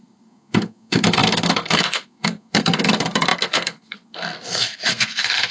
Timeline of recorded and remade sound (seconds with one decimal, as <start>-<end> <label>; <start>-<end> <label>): 0.0-5.5 remade